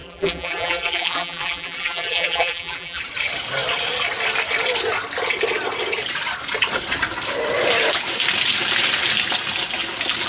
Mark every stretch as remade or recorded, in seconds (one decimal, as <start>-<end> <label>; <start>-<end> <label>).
0.0-3.0 remade; 3.0-10.3 recorded